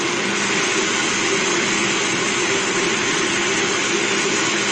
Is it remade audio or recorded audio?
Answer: recorded